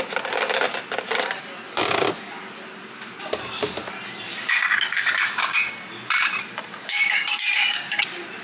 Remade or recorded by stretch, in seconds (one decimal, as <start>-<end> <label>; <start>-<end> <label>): 0.0-4.3 recorded; 4.3-5.7 remade; 5.7-6.8 recorded; 6.8-8.0 remade; 8.0-8.4 recorded